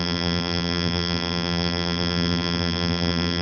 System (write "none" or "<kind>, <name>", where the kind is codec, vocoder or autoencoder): vocoder, BigVGAN v2